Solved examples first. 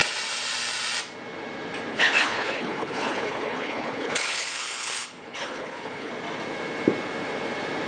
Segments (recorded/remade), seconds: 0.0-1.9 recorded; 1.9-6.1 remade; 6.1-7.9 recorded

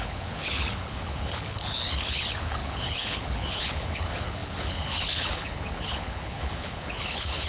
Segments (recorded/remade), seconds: 0.0-7.5 remade

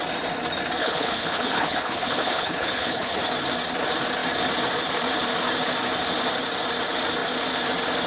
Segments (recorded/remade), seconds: 0.0-0.8 recorded; 0.8-3.2 remade; 3.2-8.1 recorded

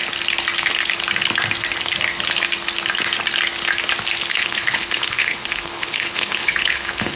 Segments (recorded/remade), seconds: 0.0-4.3 recorded; 4.3-7.2 remade